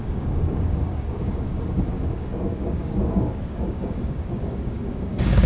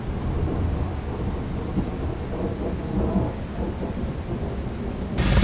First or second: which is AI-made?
first